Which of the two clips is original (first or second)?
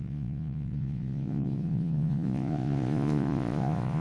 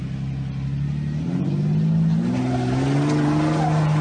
second